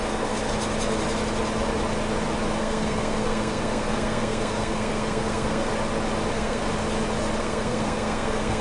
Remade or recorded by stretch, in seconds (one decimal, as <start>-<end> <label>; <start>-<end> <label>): 0.0-0.5 remade; 0.5-2.6 recorded; 2.6-5.7 remade; 5.7-6.3 recorded; 6.3-6.7 remade; 6.7-7.4 recorded; 7.4-8.6 remade